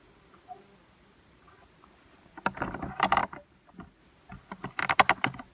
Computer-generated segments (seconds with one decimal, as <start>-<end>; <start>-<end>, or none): none